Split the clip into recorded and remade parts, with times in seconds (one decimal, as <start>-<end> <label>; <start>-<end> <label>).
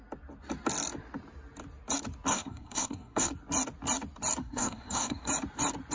0.0-2.3 recorded; 2.3-3.3 remade; 3.3-4.4 recorded; 4.4-5.3 remade; 5.3-5.9 recorded